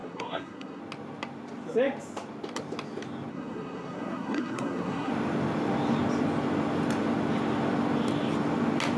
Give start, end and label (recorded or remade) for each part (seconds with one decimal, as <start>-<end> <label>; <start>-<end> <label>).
0.0-0.8 remade; 0.8-3.3 recorded; 3.3-5.1 remade; 5.1-9.0 recorded